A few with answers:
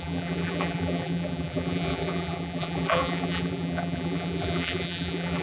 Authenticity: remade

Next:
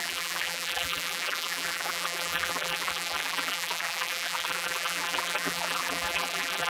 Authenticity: remade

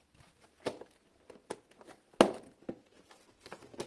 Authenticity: recorded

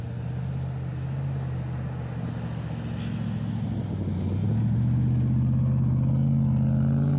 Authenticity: recorded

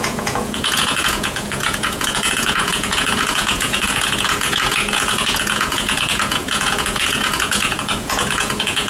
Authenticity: remade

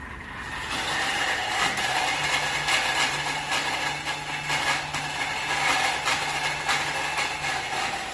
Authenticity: recorded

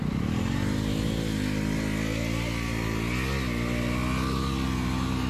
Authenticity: recorded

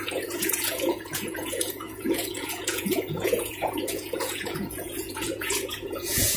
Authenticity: remade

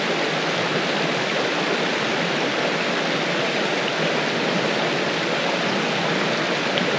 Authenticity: recorded